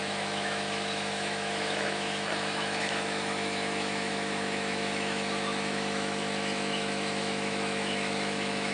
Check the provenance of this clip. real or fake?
fake